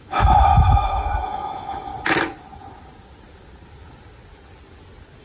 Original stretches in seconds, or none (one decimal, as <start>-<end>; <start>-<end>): 1.9-5.2